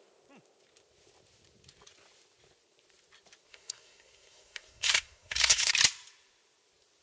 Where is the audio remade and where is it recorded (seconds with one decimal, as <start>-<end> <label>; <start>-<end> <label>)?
0.0-3.5 recorded; 3.5-5.7 remade; 5.7-7.0 recorded